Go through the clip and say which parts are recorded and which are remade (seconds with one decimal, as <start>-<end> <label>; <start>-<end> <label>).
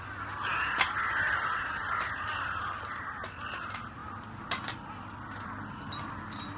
0.0-6.6 recorded